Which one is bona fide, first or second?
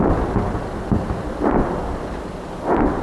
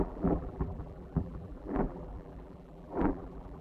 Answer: first